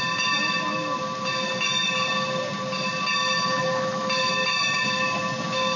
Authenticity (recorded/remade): recorded